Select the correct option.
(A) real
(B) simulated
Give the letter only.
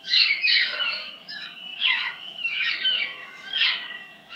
B